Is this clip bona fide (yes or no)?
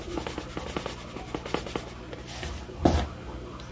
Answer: yes